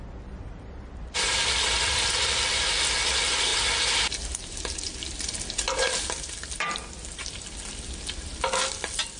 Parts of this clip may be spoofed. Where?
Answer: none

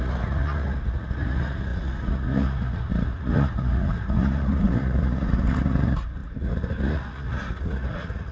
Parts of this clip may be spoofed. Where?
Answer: 0.0-8.3

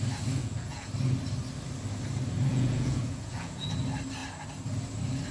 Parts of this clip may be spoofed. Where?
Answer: 0.4-0.9; 2.5-3.7

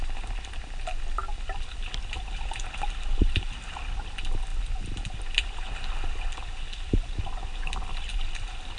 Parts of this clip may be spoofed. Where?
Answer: none

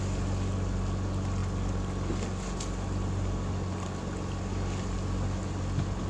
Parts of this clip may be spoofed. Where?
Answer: none